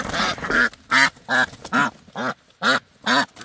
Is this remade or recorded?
recorded